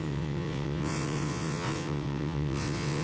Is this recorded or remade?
remade